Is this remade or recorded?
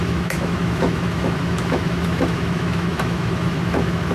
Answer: remade